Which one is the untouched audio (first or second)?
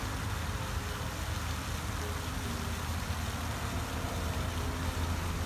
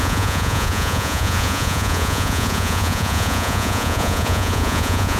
first